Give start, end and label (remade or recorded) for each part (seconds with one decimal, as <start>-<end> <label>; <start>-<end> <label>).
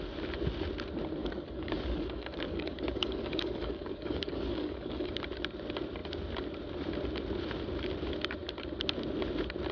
0.0-1.2 recorded; 1.2-5.1 remade; 5.1-9.7 recorded